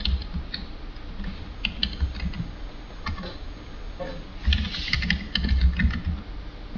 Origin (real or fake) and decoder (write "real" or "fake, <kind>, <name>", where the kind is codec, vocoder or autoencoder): real